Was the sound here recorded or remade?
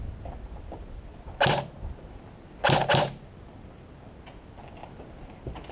recorded